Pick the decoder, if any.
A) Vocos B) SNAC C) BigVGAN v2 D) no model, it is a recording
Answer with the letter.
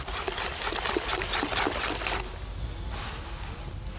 D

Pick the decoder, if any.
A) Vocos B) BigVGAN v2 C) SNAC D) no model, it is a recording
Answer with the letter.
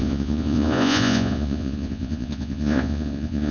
A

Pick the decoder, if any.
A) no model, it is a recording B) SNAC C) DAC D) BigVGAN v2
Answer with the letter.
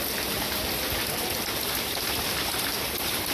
A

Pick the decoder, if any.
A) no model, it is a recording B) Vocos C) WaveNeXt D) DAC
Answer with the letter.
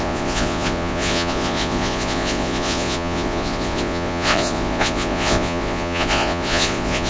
B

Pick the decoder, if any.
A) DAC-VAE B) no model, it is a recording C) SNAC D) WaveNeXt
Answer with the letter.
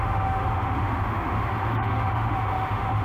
A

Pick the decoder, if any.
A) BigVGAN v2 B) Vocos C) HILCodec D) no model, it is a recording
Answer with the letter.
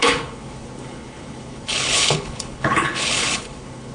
C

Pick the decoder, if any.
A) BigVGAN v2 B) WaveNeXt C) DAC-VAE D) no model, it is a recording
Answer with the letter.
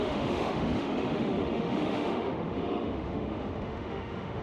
C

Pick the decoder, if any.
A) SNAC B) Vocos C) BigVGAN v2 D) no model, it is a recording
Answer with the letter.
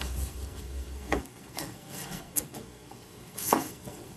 A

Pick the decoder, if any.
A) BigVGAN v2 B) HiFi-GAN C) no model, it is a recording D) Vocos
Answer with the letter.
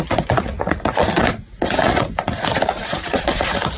D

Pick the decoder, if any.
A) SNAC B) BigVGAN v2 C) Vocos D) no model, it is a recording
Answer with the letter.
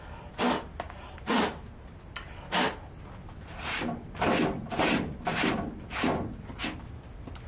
D